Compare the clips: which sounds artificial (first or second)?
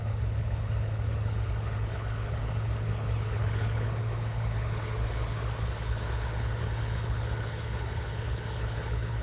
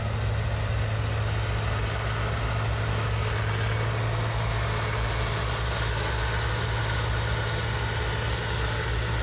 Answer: first